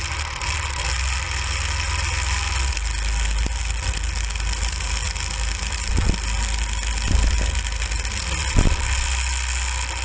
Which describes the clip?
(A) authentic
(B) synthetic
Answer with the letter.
A